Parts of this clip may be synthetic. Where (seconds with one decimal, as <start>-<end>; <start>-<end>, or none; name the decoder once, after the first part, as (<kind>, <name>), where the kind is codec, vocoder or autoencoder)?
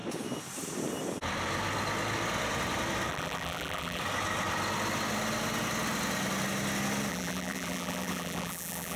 3.1-4.0 (vocoder, BigVGAN v2); 7.1-9.0